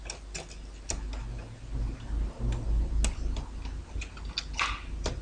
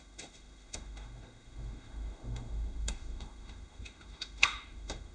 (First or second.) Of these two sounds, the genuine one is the first